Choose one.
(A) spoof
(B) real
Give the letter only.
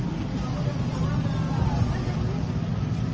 B